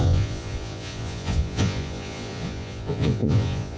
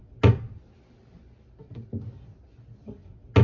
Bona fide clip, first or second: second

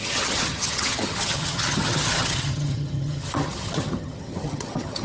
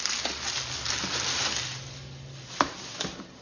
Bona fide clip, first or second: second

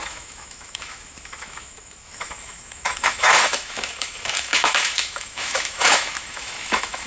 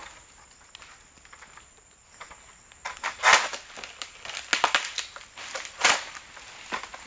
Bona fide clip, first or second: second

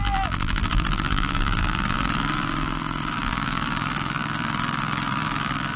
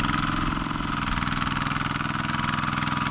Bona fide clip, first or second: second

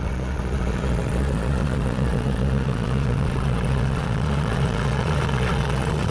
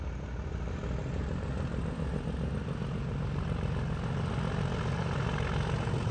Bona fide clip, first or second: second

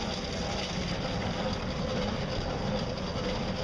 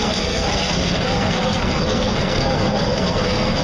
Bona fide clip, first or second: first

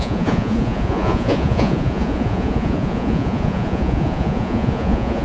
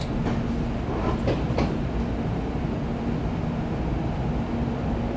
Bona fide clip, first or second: second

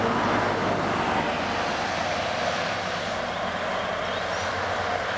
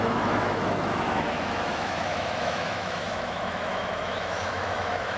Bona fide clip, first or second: first